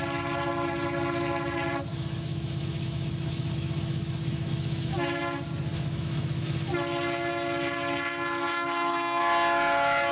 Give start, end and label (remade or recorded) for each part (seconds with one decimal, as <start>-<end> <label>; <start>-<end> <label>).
0.0-1.9 recorded; 1.9-5.2 remade; 5.2-5.7 recorded; 5.7-6.7 remade; 6.7-8.5 recorded; 8.5-9.2 remade; 9.2-10.1 recorded